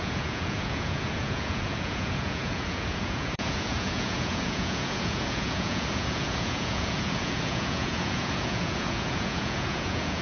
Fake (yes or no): yes